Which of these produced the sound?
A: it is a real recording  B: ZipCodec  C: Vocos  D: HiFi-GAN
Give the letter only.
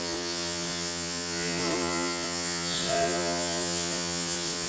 C